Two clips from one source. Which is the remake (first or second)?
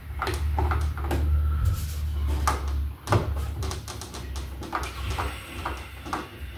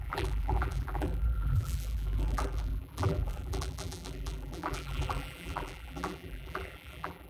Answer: second